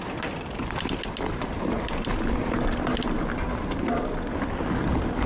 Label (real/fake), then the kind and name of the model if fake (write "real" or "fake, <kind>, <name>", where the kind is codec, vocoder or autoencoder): real